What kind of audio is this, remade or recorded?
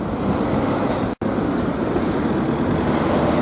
recorded